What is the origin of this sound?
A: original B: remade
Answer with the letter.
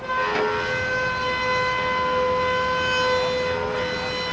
A